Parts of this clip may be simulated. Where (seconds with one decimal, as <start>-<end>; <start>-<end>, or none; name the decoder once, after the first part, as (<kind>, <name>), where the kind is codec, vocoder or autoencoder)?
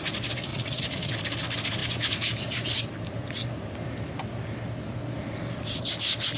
0.5-1.1 (vocoder, Vocos)